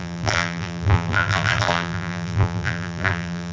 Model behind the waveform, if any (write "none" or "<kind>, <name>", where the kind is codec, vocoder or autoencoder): vocoder, BigVGAN v2